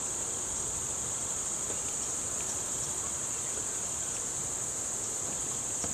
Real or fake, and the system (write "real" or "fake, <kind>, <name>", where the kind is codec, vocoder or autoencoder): fake, vocoder, BigVGAN v2